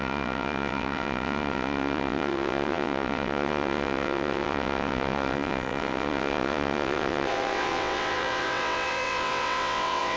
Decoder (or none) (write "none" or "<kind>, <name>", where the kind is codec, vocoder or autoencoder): vocoder, WaveNeXt